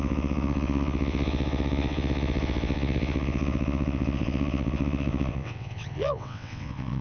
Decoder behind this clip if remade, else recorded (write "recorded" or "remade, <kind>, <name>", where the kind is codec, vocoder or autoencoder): remade, vocoder, WaveNeXt